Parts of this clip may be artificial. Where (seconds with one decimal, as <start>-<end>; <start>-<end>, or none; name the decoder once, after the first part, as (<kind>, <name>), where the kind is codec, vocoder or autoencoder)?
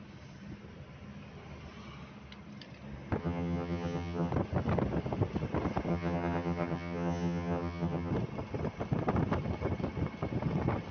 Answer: 3.2-4.3 (vocoder, HiFi-GAN); 5.9-8.1